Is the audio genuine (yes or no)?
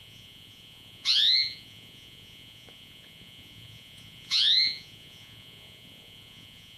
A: no